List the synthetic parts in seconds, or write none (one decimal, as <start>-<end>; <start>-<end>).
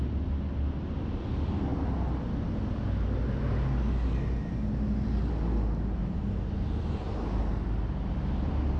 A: none